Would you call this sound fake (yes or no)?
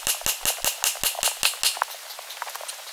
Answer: no